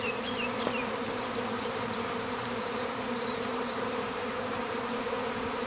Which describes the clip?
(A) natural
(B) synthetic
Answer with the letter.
B